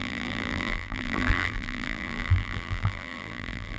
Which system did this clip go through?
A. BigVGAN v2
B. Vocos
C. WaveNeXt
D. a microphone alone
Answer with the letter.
A